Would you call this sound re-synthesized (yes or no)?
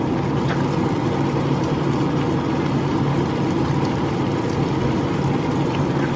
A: no